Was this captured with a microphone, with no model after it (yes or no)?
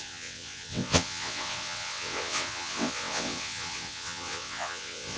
no